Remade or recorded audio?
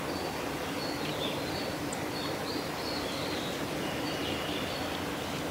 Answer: recorded